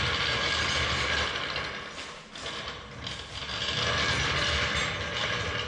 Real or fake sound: real